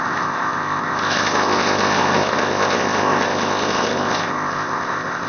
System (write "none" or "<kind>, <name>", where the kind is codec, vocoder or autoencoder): codec, ZipCodec